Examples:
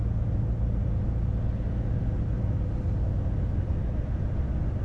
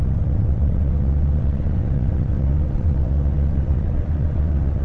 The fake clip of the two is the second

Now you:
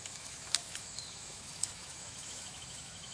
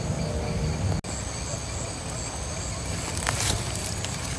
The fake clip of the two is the first